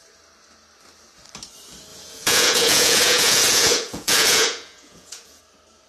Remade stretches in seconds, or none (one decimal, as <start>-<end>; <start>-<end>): 1.9-5.4